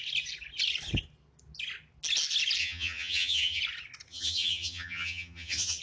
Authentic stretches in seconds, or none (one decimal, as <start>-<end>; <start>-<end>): 0.0-2.6; 3.6-4.1